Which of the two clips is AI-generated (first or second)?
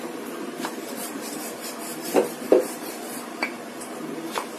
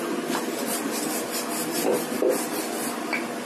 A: first